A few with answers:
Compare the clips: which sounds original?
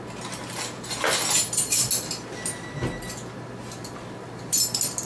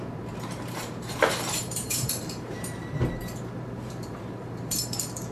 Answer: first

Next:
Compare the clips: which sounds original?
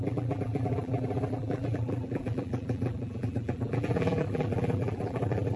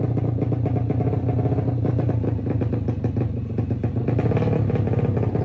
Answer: second